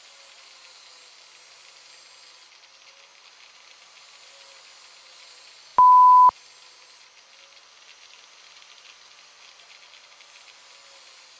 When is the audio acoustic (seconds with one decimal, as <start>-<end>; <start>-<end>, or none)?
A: 0.0-11.4